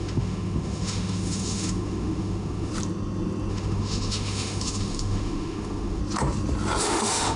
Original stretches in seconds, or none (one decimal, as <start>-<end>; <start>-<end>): 2.7-3.5; 6.0-6.8